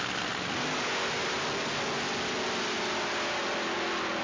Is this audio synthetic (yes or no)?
no